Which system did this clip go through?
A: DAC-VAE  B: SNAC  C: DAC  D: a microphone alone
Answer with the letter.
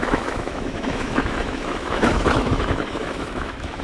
A